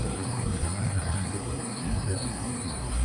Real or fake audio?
fake